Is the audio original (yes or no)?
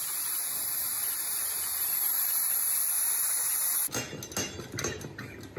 yes